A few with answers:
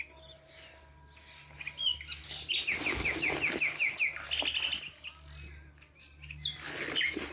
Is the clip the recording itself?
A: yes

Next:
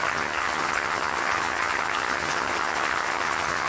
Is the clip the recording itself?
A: no